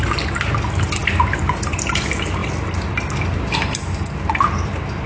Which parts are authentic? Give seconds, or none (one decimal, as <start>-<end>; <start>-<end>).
0.0-5.1